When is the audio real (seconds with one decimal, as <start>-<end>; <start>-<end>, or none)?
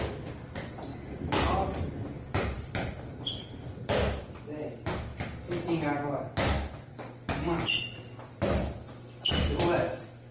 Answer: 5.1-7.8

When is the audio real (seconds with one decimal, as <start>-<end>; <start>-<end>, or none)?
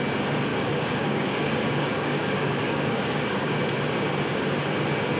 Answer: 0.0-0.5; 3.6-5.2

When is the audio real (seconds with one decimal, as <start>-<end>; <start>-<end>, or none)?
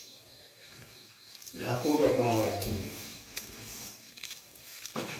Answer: none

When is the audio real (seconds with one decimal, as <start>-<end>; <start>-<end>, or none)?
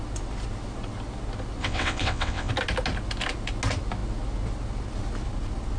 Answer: 0.0-1.6; 2.5-5.8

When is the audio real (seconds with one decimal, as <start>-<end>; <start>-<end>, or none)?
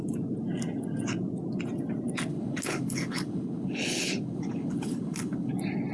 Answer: 0.0-2.3; 5.5-5.9